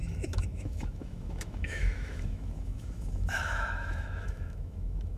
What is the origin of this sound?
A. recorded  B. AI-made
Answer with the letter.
B